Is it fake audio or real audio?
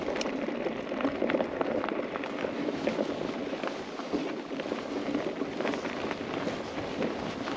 real